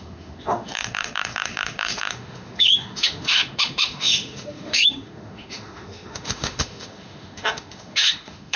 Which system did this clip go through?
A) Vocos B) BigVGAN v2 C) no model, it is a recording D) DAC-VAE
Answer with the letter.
D